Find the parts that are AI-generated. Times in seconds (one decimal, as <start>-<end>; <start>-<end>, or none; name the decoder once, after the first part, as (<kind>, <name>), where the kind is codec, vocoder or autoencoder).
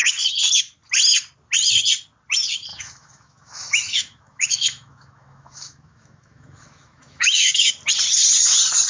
2.7-7.7 (autoencoder, DAC-VAE)